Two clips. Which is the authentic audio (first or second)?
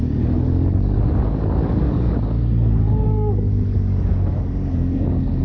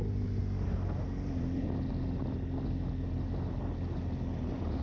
second